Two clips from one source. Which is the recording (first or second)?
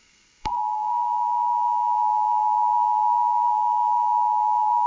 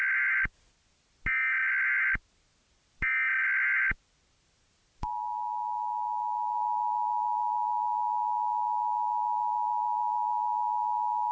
second